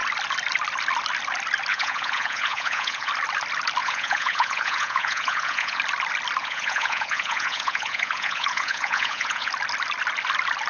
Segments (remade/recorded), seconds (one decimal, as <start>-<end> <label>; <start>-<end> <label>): 0.0-1.7 recorded; 1.7-3.1 remade; 3.1-3.8 recorded; 3.8-5.8 remade; 5.8-6.4 recorded; 6.4-9.5 remade; 9.5-10.7 recorded